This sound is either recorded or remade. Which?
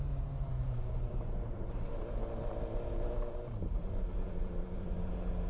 remade